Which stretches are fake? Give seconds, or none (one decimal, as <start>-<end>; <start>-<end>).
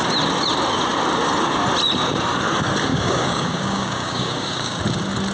2.9-4.8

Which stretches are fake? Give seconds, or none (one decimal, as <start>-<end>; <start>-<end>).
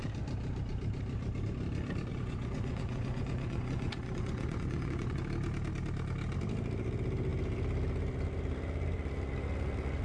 2.1-5.2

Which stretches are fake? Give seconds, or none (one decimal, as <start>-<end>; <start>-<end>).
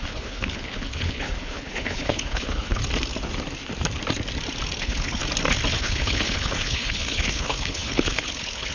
0.0-2.8; 4.8-5.2; 5.8-8.7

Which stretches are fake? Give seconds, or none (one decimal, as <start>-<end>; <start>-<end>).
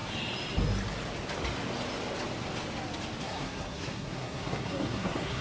3.2-5.4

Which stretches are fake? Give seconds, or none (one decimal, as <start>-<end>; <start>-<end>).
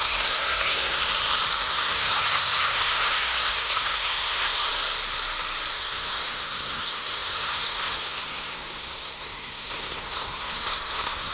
0.0-1.0; 1.7-4.7; 5.7-11.3